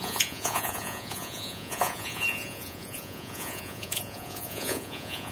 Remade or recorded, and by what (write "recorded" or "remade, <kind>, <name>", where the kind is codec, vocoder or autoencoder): remade, vocoder, Vocos